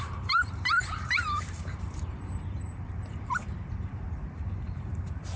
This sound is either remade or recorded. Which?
remade